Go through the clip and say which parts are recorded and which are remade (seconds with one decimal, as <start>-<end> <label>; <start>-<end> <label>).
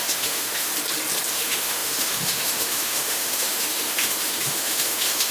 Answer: 0.0-0.7 remade; 0.7-1.3 recorded; 1.3-5.3 remade